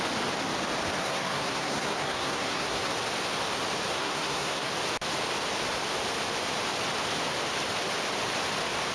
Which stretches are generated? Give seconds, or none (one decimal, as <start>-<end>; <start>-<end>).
1.0-2.9; 3.9-4.7

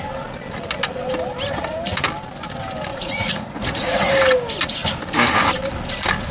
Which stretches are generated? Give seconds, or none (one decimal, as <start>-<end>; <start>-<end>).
2.9-4.1